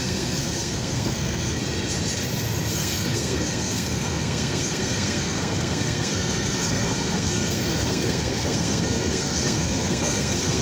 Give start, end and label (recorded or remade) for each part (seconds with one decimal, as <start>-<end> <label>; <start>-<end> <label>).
0.0-1.6 remade; 1.6-2.7 recorded; 2.7-10.6 remade